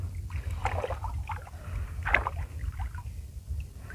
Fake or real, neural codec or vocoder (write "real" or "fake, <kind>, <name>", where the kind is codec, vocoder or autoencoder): real